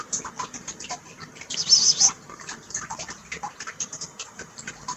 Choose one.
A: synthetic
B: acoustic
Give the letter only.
B